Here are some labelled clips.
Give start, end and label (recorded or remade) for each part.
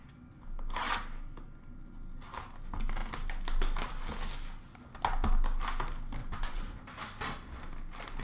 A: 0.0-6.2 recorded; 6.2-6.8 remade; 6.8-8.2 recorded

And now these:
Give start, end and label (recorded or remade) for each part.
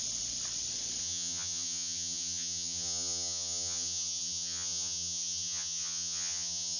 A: 0.0-1.0 recorded; 1.0-6.8 remade